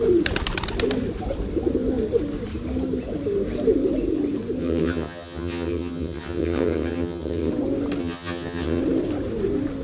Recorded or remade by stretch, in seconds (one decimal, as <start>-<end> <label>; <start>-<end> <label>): 0.0-4.6 recorded; 4.6-7.5 remade; 7.5-8.0 recorded; 8.0-8.8 remade; 8.8-9.8 recorded